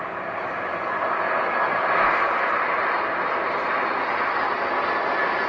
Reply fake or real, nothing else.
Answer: real